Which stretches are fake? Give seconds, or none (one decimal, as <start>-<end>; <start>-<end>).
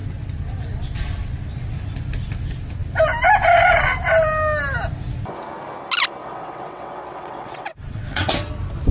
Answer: 6.2-8.3